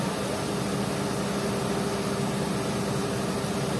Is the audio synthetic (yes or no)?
no